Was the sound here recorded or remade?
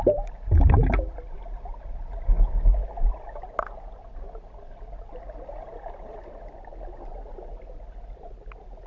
recorded